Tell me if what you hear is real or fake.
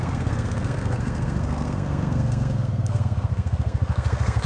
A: fake